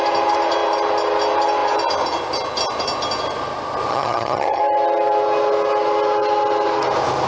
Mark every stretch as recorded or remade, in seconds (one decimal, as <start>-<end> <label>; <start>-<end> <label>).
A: 0.0-3.9 recorded; 3.9-4.6 remade; 4.6-7.3 recorded